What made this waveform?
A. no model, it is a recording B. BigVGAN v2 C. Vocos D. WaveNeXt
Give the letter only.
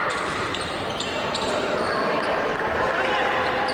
B